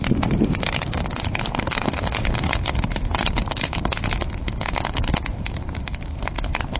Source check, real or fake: fake